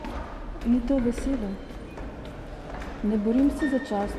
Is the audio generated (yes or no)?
no